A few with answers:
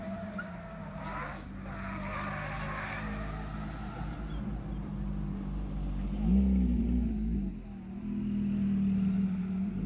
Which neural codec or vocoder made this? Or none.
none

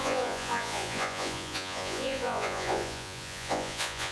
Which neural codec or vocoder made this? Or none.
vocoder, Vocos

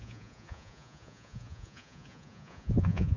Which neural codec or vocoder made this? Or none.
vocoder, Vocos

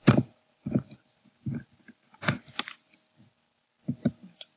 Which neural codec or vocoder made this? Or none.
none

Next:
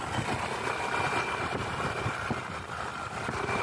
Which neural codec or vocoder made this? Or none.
none